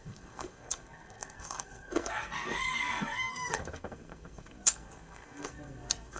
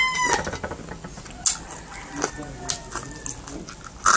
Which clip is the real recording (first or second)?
second